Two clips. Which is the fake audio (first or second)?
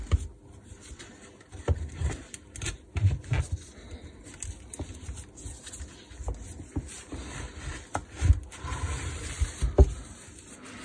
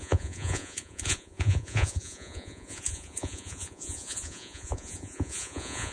second